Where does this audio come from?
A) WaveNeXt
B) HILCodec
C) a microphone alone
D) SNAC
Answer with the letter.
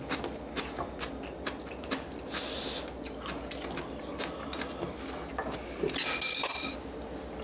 C